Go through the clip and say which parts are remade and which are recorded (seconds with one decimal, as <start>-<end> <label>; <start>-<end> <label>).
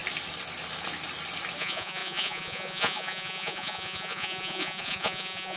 0.0-1.6 recorded; 1.6-5.6 remade